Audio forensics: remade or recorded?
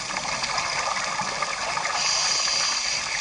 recorded